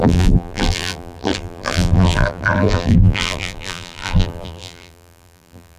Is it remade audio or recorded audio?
remade